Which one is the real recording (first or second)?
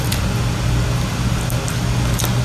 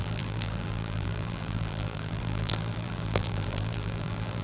first